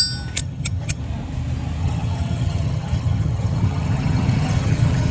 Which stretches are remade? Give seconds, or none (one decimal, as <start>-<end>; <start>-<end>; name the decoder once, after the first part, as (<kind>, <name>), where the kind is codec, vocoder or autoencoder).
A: 0.4-1.0 (vocoder, HiFi-GAN); 1.8-5.1